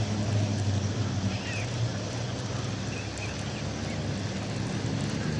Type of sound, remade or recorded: recorded